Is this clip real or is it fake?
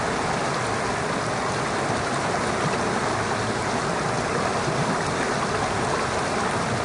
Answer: real